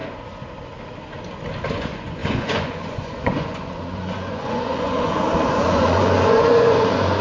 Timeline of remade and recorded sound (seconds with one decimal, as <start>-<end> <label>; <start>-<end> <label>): 0.0-1.7 recorded; 1.7-7.2 remade